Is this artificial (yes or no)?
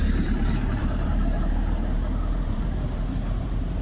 yes